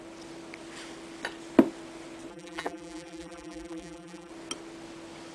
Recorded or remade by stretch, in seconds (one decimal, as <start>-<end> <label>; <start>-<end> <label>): 0.0-2.3 recorded; 2.3-4.3 remade; 4.3-5.3 recorded